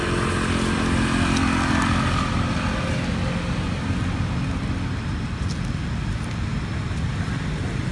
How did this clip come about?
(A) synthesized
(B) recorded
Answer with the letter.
B